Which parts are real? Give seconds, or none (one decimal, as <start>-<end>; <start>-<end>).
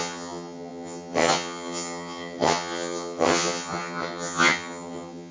none